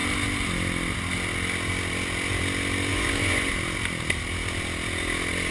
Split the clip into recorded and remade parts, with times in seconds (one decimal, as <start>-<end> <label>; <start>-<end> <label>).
0.0-2.9 recorded; 2.9-3.5 remade; 3.5-5.5 recorded